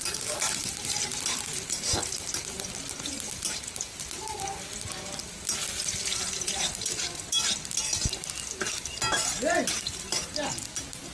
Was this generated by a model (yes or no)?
no